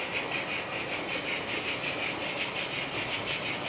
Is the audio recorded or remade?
recorded